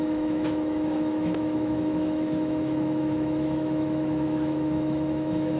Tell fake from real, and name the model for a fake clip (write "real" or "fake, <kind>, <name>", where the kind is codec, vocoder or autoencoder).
fake, autoencoder, DAC-VAE